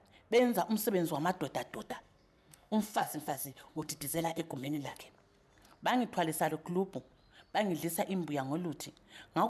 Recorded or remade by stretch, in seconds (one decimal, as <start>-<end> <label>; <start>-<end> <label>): 0.0-1.7 recorded; 1.7-5.0 remade; 5.0-9.5 recorded